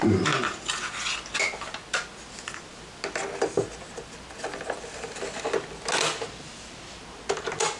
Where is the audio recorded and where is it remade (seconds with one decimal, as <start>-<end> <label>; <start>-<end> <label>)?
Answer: 0.0-7.8 recorded